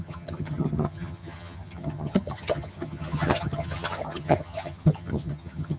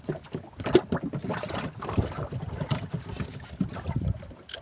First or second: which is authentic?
second